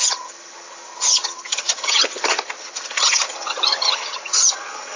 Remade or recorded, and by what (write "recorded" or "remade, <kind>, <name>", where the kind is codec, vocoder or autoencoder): remade, vocoder, HiFi-GAN